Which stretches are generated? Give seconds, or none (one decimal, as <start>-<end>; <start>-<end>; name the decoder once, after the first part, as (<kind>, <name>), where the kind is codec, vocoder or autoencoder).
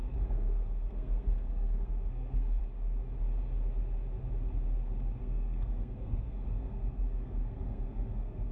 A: 0.0-2.6 (codec, SNAC); 5.2-8.5